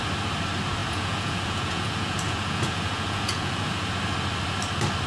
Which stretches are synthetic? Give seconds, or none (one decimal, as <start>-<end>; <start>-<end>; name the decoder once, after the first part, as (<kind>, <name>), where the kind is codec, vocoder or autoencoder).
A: 0.8-3.9 (vocoder, Vocos)